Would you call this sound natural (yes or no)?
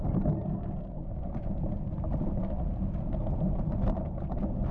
yes